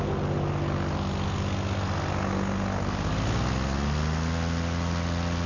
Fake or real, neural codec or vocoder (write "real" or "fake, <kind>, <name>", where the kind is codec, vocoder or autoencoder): real